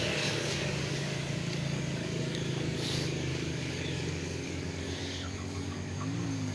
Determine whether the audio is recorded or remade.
remade